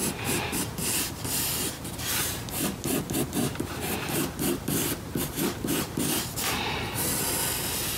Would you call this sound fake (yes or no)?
no